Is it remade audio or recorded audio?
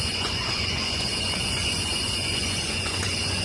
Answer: remade